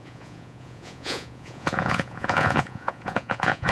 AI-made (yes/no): yes